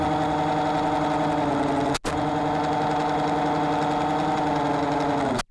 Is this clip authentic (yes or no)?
yes